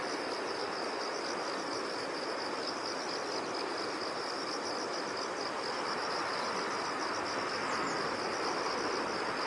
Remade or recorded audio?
recorded